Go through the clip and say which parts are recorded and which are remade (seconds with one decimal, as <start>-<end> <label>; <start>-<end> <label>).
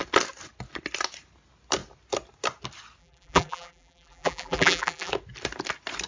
0.0-3.0 recorded; 3.0-5.1 remade; 5.1-6.1 recorded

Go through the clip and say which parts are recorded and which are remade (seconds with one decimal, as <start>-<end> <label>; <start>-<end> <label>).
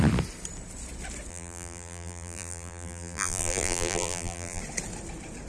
0.0-1.3 recorded; 1.3-4.6 remade; 4.6-5.5 recorded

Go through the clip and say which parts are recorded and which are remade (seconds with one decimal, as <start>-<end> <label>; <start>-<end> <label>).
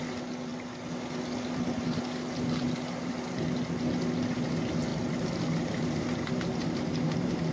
0.0-7.5 recorded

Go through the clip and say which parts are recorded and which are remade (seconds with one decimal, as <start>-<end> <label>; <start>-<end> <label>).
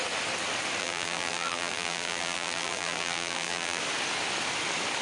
0.0-0.8 recorded; 0.8-3.8 remade; 3.8-5.0 recorded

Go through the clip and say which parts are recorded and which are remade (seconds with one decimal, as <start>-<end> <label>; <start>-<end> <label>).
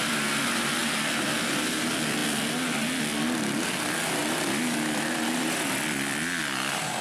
0.0-4.2 recorded; 4.2-6.4 remade; 6.4-7.0 recorded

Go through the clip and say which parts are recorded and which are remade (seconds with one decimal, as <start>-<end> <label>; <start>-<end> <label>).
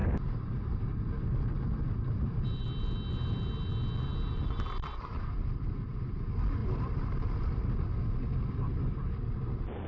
0.0-1.0 remade; 1.0-6.6 recorded; 6.6-7.8 remade; 7.8-9.9 recorded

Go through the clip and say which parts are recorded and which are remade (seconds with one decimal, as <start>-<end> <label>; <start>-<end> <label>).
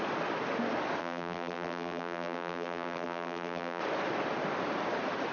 0.0-1.0 recorded; 1.0-3.8 remade; 3.8-5.3 recorded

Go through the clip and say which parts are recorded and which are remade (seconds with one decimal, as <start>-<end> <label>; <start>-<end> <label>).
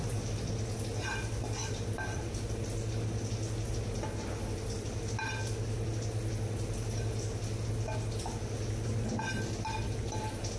0.0-1.6 recorded; 1.6-2.4 remade; 2.4-10.6 recorded